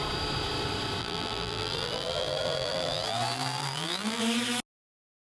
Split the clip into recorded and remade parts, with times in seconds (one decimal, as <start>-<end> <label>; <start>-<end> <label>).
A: 0.0-1.0 recorded; 1.0-4.2 remade; 4.2-5.3 recorded